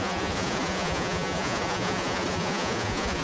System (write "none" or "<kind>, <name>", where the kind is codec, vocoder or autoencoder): vocoder, Vocos